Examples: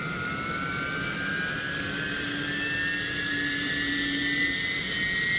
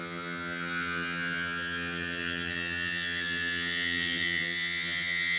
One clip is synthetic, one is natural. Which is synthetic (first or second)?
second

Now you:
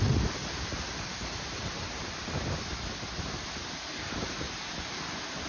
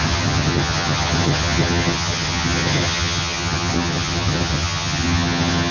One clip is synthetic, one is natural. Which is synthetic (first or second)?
second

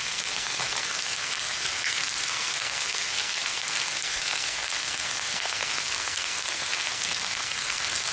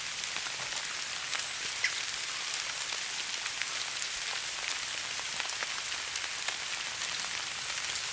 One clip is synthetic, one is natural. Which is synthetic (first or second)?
first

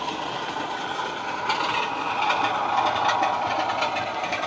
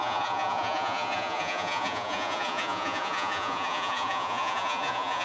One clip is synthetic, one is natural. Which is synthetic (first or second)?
second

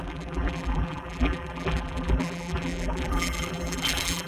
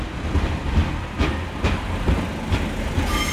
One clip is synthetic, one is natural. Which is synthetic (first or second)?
first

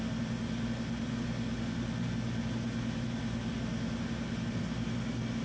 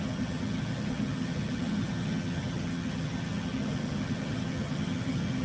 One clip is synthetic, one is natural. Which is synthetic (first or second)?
second